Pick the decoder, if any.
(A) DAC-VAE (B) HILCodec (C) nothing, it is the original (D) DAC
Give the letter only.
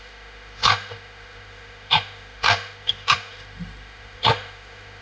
A